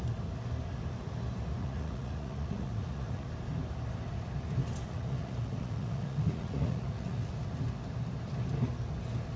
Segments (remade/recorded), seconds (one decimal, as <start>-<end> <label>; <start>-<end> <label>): 0.0-1.6 recorded; 1.6-3.3 remade; 3.3-4.8 recorded; 4.8-7.3 remade; 7.3-9.4 recorded